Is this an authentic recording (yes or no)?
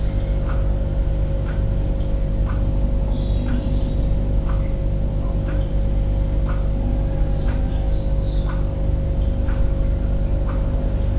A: yes